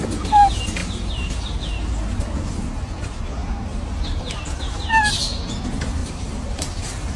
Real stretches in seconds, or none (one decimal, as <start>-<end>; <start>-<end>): 0.0-0.8; 1.6-3.4; 4.2-6.0; 6.6-7.2